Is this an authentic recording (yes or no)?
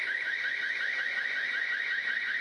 no